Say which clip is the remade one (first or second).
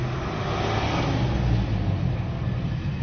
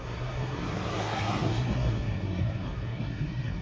second